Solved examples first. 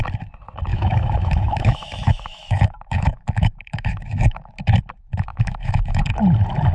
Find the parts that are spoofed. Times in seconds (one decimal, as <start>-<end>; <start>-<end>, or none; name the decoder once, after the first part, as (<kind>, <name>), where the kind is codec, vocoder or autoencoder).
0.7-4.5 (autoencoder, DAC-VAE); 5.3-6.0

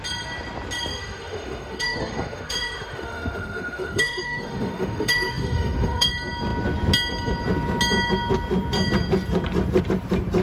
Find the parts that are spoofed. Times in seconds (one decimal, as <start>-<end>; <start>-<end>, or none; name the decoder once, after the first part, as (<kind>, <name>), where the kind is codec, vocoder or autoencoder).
0.9-6.1 (autoencoder, DAC-VAE)

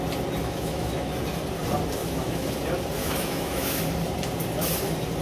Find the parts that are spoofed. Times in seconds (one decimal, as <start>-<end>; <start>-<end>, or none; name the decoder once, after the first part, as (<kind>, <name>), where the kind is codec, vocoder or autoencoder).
0.4-1.1 (autoencoder, DAC-VAE); 2.0-2.5; 3.0-3.8

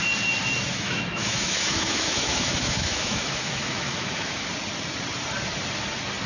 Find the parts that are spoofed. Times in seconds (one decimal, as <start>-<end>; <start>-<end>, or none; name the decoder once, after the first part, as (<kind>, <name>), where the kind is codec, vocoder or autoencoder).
0.7-4.5 (autoencoder, DAC-VAE)